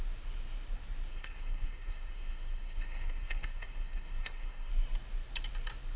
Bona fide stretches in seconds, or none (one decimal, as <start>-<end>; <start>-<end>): 0.0-1.1; 4.7-6.0